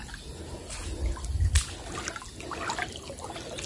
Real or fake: real